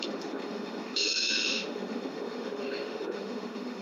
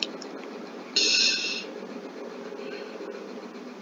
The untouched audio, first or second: second